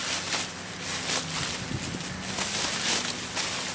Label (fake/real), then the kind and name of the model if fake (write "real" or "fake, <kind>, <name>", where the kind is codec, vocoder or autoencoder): real